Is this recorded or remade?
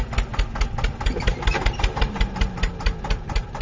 recorded